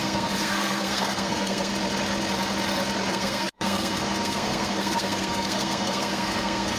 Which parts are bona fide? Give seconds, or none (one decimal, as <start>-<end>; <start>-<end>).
1.7-3.1

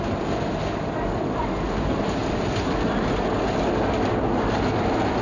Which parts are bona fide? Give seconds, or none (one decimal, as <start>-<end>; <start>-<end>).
0.0-5.2

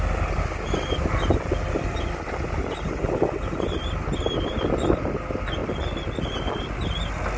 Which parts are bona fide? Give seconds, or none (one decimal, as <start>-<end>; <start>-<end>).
0.0-7.4

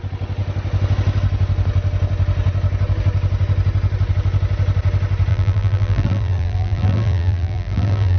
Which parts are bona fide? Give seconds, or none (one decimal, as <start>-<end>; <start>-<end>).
0.0-5.3

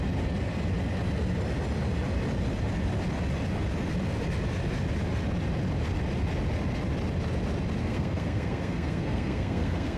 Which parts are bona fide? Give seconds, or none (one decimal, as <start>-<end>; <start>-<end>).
0.0-7.8